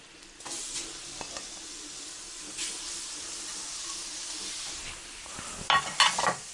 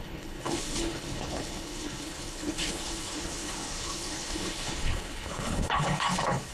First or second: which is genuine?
first